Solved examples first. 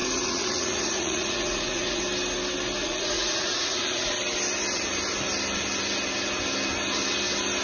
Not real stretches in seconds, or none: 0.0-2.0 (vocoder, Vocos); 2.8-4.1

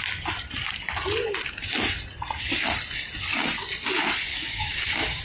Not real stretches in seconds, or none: 4.3-5.2 (codec, DAC)

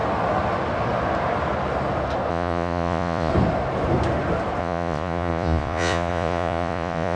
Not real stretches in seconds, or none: 2.3-3.3 (vocoder, Vocos); 4.6-7.2

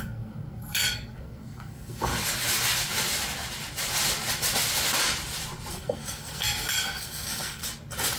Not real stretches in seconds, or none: 0.0-2.1 (codec, SNAC); 5.7-7.6

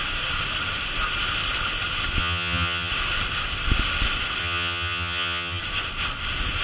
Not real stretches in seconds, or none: 2.2-2.9 (vocoder, HiFi-GAN); 4.4-5.6

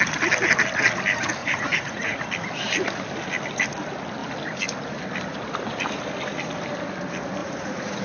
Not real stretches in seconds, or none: 1.4-2.2 (vocoder, Vocos); 7.4-8.0